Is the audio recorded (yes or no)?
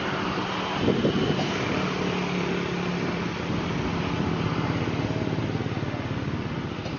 yes